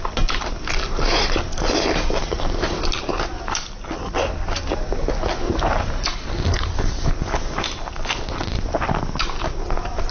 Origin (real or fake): real